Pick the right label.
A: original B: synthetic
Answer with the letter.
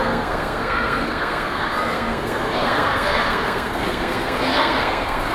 B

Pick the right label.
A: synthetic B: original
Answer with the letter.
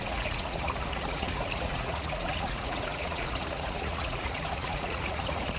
A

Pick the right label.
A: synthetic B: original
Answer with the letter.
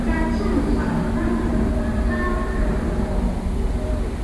A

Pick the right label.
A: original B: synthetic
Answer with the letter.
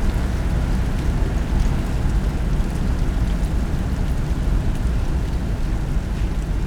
A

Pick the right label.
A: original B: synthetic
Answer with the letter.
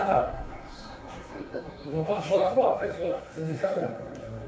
B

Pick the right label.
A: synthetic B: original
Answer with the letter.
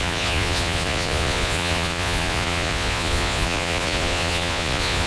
A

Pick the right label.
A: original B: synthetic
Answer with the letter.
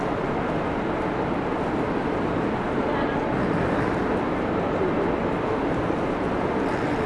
A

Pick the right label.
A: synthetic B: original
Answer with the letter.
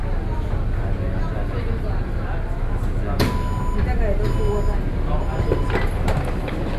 B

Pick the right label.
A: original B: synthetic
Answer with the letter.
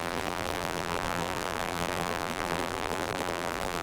B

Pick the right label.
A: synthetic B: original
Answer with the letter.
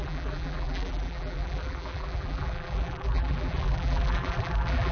A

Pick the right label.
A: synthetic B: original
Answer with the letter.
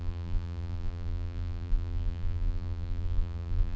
A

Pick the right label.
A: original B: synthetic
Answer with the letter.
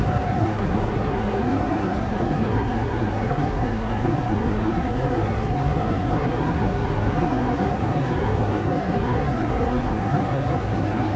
B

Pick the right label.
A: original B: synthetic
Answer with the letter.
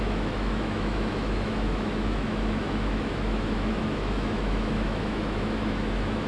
B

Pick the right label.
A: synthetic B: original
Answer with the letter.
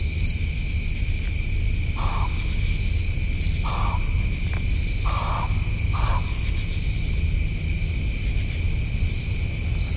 B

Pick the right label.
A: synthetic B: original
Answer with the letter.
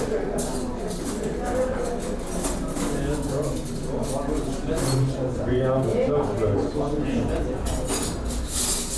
B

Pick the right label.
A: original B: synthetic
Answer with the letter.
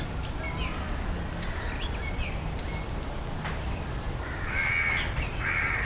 A